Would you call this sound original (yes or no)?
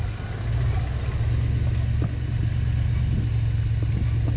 yes